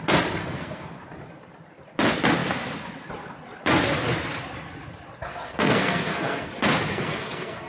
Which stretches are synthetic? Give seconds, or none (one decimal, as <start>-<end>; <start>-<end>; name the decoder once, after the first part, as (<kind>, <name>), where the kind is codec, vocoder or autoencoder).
0.4-1.0 (codec, SNAC); 5.3-6.5; 6.9-7.7